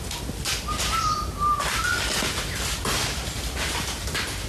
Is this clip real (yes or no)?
yes